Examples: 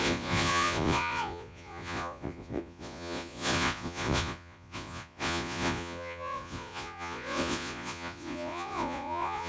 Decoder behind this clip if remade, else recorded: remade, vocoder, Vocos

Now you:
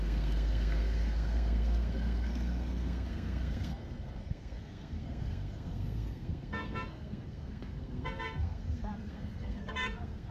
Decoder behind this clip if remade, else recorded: remade, codec, SNAC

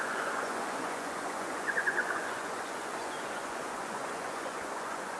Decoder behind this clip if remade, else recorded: remade, vocoder, Vocos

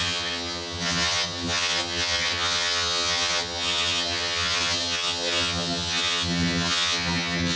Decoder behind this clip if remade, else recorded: remade, vocoder, HiFi-GAN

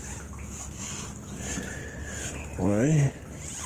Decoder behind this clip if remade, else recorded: recorded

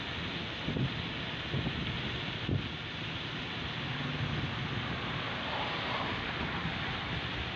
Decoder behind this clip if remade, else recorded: recorded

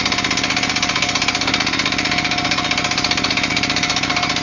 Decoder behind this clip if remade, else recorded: recorded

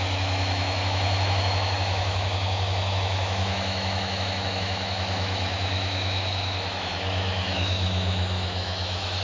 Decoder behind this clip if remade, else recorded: remade, autoencoder, DAC-VAE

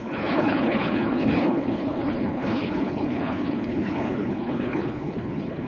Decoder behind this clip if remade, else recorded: remade, codec, HILCodec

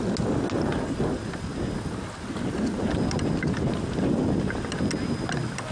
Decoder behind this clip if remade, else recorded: recorded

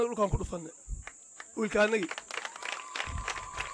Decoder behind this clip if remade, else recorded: recorded